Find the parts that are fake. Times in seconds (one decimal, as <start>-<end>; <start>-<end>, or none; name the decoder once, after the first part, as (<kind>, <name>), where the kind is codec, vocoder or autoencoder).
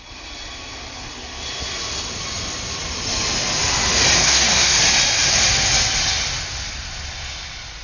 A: 4.2-4.8 (codec, SNAC)